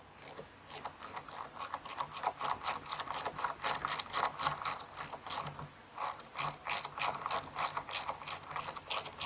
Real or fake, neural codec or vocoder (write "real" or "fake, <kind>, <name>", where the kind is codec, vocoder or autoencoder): real